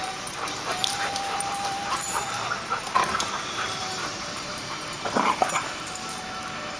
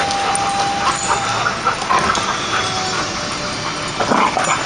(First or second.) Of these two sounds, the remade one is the first